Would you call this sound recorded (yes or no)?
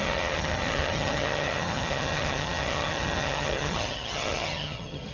no